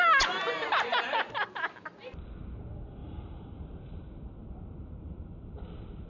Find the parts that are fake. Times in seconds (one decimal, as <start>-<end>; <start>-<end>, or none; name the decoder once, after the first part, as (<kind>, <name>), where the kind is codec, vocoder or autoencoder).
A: 3.0-3.9 (vocoder, BigVGAN v2); 4.4-5.2